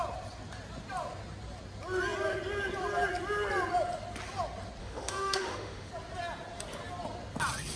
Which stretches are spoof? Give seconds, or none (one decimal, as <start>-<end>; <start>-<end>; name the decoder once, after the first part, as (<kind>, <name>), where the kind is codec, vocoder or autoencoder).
4.8-5.9 (autoencoder, DAC-VAE)